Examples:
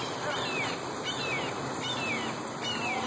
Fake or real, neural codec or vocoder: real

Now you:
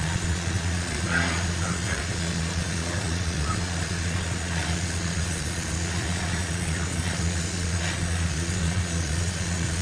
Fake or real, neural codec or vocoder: fake, vocoder, Vocos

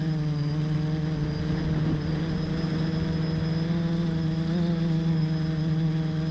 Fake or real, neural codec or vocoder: real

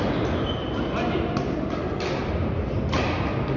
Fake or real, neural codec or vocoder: real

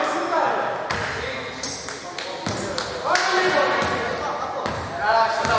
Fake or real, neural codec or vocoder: real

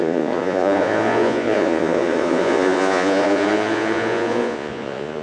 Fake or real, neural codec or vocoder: fake, vocoder, Vocos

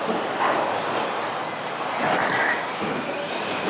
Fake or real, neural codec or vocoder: real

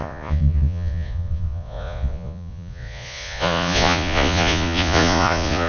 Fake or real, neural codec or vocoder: fake, vocoder, Vocos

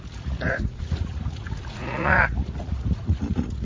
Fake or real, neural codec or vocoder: fake, vocoder, Vocos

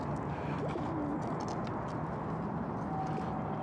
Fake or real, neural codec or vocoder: real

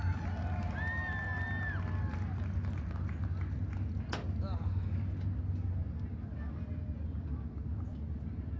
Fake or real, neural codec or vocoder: real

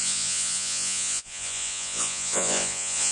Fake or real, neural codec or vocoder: fake, vocoder, Vocos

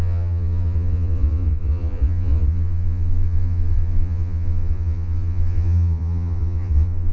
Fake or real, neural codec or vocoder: fake, vocoder, Vocos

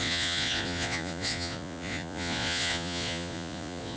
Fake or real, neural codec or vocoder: fake, vocoder, Vocos